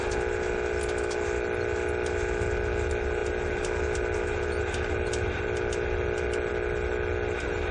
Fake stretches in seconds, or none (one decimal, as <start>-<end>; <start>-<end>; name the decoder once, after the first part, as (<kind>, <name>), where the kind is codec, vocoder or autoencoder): none